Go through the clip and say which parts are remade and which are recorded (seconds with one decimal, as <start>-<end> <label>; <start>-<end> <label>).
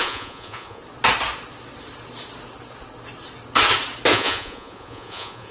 0.0-0.8 remade; 0.8-4.1 recorded; 4.1-5.5 remade